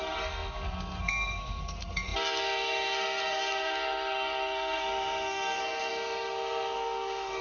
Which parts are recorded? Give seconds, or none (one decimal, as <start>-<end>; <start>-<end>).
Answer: none